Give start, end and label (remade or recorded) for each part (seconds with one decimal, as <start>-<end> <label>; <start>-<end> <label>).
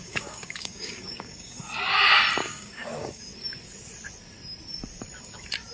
0.0-1.6 remade; 1.6-2.4 recorded; 2.4-3.2 remade; 3.2-5.7 recorded